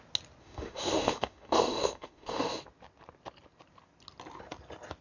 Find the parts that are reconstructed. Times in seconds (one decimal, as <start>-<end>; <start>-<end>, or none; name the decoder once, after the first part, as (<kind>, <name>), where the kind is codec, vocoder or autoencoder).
0.4-2.6 (autoencoder, DAC-VAE)